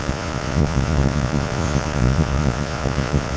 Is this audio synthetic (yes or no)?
yes